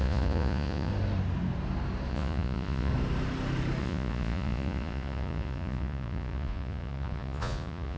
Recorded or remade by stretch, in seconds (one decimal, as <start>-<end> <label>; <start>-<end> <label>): 0.0-0.9 remade; 0.9-2.1 recorded; 2.1-2.9 remade; 2.9-3.8 recorded; 3.8-8.0 remade